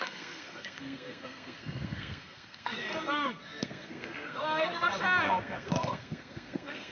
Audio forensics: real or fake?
fake